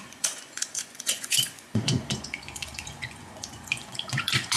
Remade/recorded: remade